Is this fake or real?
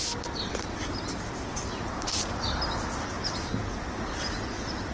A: real